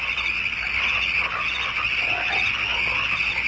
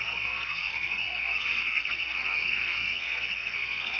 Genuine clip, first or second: first